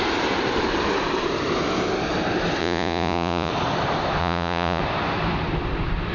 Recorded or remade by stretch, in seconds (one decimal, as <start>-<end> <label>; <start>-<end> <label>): 0.0-2.6 recorded; 2.6-3.5 remade; 3.5-4.2 recorded; 4.2-4.8 remade; 4.8-6.1 recorded